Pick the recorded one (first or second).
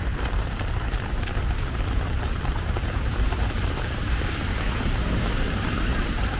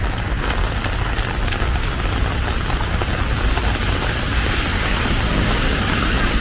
second